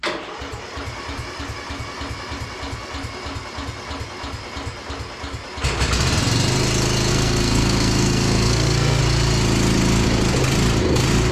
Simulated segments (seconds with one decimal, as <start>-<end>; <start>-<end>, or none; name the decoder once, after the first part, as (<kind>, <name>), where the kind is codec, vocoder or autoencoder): 7.1-9.0 (codec, SNAC)